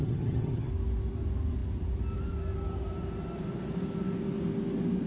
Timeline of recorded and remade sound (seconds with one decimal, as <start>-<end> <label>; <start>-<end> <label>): 0.0-0.7 remade; 0.7-5.1 recorded